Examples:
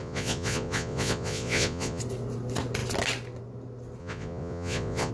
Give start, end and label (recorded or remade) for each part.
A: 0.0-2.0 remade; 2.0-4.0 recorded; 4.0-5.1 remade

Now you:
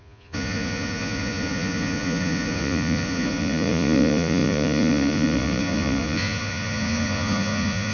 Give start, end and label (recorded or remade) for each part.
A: 0.0-7.9 remade

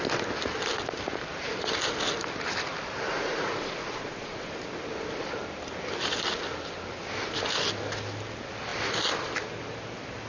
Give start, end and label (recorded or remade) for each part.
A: 0.0-3.1 recorded; 3.1-4.5 remade; 4.5-10.3 recorded

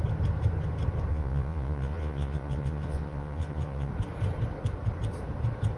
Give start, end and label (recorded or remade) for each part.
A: 0.0-1.1 recorded; 1.1-3.9 remade; 3.9-5.8 recorded

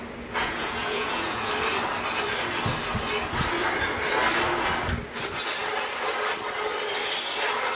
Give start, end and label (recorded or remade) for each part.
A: 0.0-0.4 recorded; 0.4-1.5 remade; 1.5-7.7 recorded

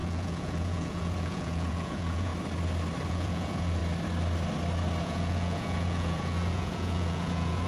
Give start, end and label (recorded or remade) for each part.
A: 0.0-2.3 remade; 2.3-3.1 recorded; 3.1-3.8 remade; 3.8-5.0 recorded; 5.0-7.7 remade

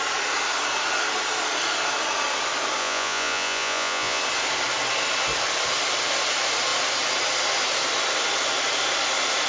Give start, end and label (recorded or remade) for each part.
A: 0.0-2.8 recorded; 2.8-4.2 remade; 4.2-9.5 recorded